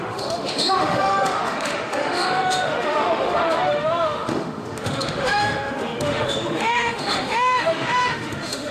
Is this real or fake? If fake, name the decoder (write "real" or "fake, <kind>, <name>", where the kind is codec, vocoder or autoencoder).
fake, autoencoder, DAC-VAE